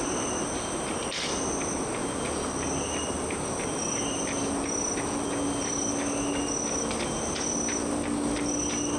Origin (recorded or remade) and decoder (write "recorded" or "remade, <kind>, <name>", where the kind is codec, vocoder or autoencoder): recorded